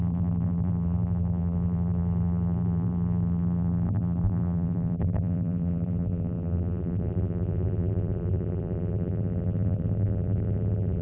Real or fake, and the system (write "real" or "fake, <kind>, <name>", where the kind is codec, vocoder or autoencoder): fake, vocoder, BigVGAN v2